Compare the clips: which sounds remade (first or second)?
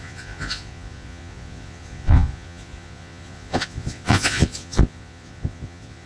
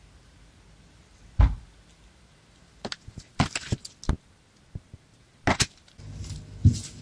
first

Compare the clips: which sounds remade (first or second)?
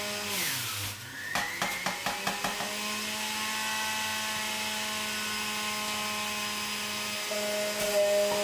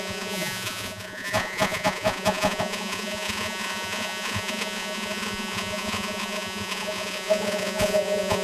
second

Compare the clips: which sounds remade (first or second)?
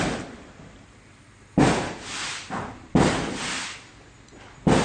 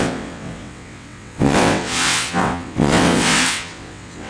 second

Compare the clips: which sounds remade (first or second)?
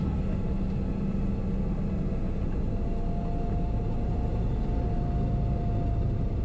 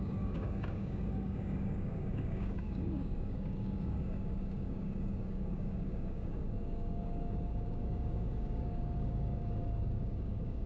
second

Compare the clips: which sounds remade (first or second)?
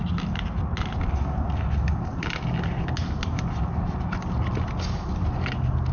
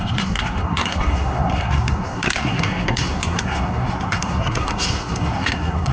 second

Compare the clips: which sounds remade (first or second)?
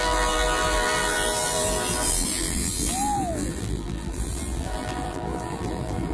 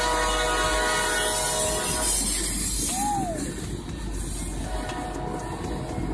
first